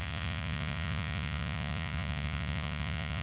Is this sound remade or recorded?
remade